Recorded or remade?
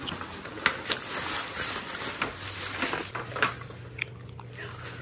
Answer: recorded